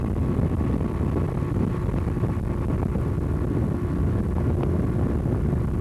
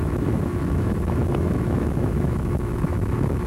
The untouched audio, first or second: first